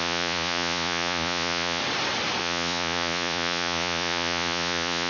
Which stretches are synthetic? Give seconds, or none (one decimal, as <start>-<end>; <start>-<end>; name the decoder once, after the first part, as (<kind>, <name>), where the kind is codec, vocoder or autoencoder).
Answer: 0.0-1.8 (vocoder, Vocos); 2.4-5.1